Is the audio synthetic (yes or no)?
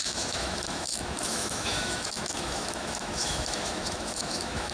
yes